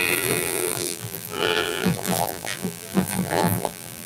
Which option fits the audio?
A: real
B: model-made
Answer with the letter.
B